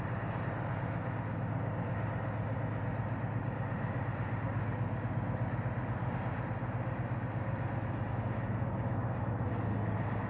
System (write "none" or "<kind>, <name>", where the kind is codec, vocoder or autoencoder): none